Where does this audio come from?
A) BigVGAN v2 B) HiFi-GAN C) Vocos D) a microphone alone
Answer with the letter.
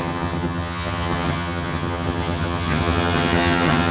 B